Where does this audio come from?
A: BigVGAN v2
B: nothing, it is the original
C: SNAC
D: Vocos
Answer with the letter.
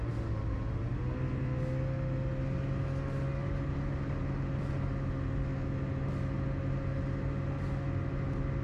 B